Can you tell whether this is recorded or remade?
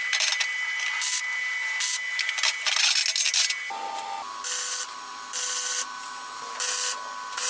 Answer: recorded